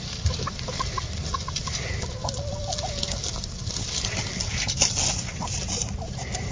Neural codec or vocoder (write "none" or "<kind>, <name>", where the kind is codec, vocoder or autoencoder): none